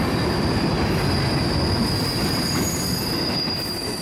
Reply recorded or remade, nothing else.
remade